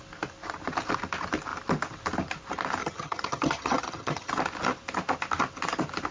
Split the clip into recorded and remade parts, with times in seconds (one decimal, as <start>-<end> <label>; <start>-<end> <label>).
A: 0.0-2.8 recorded; 2.8-4.3 remade; 4.3-6.1 recorded